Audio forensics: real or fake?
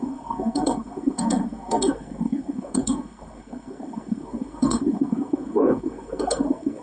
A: fake